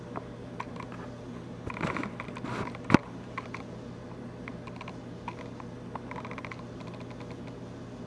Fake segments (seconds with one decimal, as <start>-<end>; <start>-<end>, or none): none